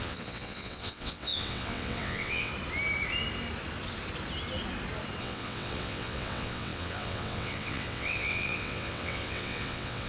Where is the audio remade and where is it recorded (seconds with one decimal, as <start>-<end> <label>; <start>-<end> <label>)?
0.0-2.5 remade; 2.5-5.2 recorded; 5.2-10.1 remade